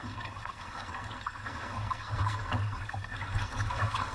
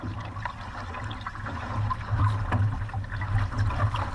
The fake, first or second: first